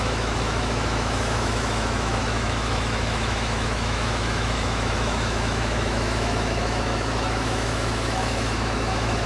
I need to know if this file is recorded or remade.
remade